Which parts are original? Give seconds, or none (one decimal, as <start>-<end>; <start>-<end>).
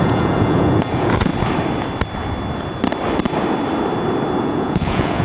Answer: 1.3-4.4